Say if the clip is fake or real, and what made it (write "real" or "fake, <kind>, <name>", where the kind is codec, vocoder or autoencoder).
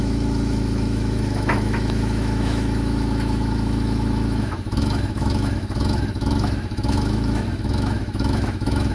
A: fake, autoencoder, DAC-VAE